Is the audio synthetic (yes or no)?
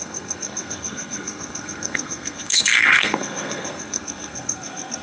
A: yes